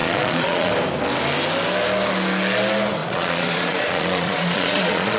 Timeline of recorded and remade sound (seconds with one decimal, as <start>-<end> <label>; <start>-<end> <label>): 0.0-0.7 remade; 0.7-3.0 recorded; 3.0-5.2 remade